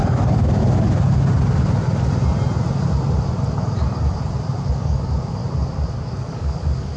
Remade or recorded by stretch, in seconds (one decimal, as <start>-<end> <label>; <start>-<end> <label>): 0.0-0.6 remade; 0.6-4.7 recorded; 4.7-5.4 remade; 5.4-6.2 recorded; 6.2-7.0 remade